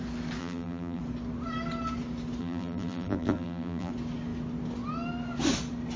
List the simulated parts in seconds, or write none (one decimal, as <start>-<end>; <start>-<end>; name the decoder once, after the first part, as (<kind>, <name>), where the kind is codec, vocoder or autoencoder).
0.4-1.0 (vocoder, BigVGAN v2); 2.4-3.9